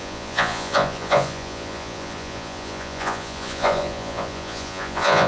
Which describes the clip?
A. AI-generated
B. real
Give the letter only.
A